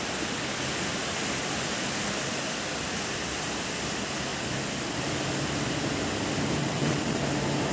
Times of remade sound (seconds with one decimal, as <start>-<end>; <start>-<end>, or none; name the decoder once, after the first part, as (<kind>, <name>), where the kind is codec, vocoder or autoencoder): 6.6-7.2 (vocoder, WaveNeXt)